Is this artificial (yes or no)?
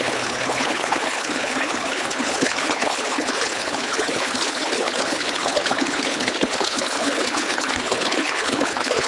yes